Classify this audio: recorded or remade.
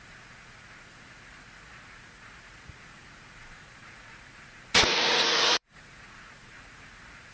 remade